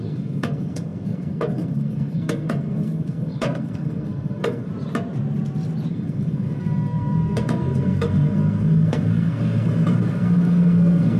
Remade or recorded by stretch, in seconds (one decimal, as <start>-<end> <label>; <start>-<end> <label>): 0.0-4.7 remade; 4.7-5.9 recorded; 5.9-11.2 remade